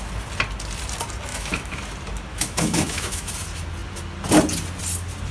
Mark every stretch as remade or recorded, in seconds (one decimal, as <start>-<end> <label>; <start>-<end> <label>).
0.0-1.3 recorded; 1.3-1.8 remade; 1.8-2.3 recorded; 2.3-3.3 remade; 3.3-5.3 recorded